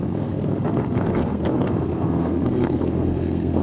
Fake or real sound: fake